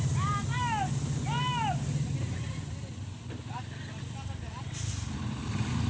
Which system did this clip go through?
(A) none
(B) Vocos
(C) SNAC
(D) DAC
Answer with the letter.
A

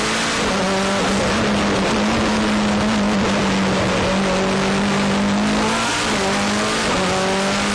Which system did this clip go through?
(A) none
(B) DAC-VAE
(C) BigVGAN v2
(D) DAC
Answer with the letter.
A